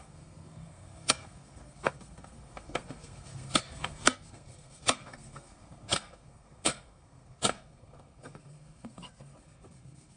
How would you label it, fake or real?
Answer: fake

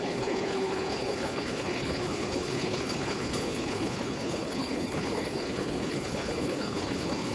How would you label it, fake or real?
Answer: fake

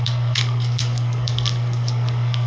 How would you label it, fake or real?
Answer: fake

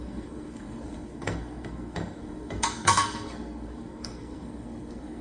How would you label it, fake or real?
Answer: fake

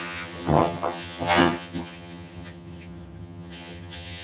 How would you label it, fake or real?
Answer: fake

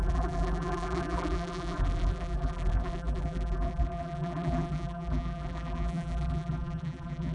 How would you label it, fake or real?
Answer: fake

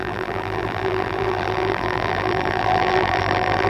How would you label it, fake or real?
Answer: fake